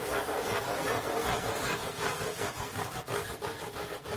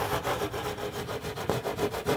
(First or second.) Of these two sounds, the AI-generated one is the first